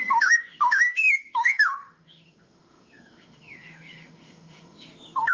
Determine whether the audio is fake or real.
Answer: fake